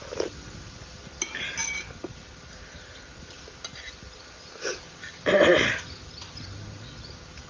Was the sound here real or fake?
real